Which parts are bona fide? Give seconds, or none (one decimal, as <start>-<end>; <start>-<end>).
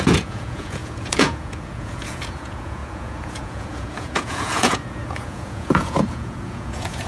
none